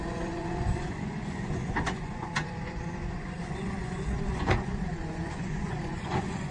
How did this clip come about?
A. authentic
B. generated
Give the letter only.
B